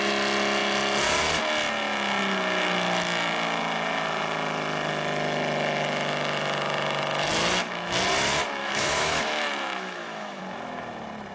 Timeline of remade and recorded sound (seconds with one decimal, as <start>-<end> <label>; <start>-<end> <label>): 0.0-8.6 recorded; 8.6-10.4 remade; 10.4-11.3 recorded